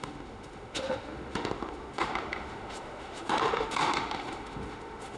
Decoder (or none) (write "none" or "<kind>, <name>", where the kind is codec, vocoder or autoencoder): autoencoder, DAC-VAE